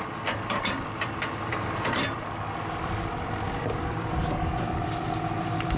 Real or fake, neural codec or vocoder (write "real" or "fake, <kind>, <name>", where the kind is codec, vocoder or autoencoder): fake, vocoder, BigVGAN v2